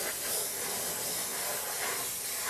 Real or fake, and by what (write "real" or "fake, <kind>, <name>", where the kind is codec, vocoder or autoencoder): real